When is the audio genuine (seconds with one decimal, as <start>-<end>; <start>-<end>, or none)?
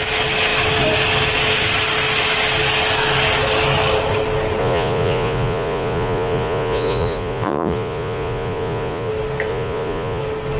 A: 0.0-4.6; 9.1-9.5; 10.2-10.6